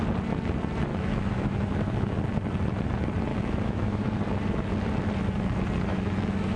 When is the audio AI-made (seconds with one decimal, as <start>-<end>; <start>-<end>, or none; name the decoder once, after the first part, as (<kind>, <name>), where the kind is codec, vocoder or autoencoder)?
0.9-2.2 (autoencoder, DAC-VAE); 3.3-4.1; 5.9-6.6